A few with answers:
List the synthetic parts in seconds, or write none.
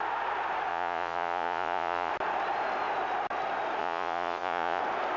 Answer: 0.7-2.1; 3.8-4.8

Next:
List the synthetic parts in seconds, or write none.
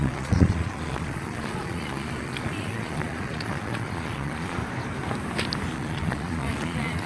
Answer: 0.0-4.6; 5.7-7.1